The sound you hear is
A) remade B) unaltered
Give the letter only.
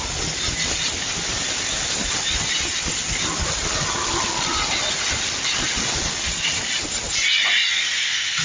B